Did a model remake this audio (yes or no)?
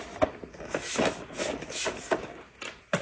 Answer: no